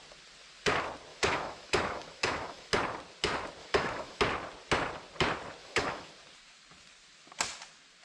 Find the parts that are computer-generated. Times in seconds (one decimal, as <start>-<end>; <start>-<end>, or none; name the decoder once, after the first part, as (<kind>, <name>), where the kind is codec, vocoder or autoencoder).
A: 1.1-2.7 (autoencoder, DAC-VAE); 3.6-4.2; 5.6-6.1

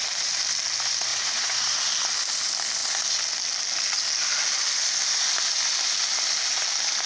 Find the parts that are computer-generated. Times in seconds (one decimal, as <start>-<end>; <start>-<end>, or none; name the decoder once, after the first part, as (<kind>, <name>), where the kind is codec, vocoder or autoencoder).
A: 1.1-1.8 (vocoder, Vocos)